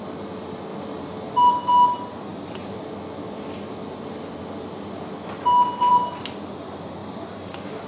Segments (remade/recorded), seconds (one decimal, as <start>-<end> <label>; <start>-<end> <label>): 0.0-7.9 recorded

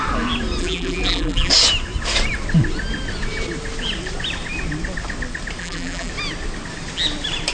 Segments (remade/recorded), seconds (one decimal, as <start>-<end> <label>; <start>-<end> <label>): 0.0-0.6 recorded; 0.6-1.5 remade; 1.5-5.6 recorded; 5.6-6.1 remade; 6.1-7.5 recorded

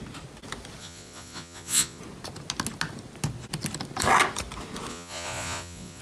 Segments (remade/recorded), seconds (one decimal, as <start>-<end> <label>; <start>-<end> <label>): 0.0-0.8 recorded; 0.8-2.0 remade; 2.0-4.9 recorded; 4.9-6.0 remade

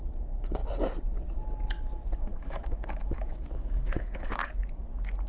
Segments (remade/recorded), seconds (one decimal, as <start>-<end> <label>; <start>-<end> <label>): 0.0-2.3 recorded; 2.3-4.5 remade; 4.5-5.3 recorded